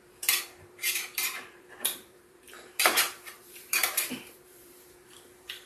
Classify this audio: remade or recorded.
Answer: remade